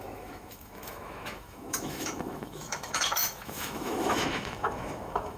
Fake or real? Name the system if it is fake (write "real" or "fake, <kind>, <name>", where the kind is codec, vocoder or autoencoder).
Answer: fake, autoencoder, DAC-VAE